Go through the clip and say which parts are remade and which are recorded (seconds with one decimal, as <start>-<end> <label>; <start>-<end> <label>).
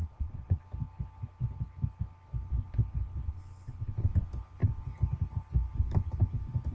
0.0-0.6 remade; 0.6-6.7 recorded